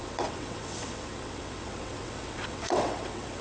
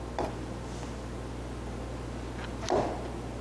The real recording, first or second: second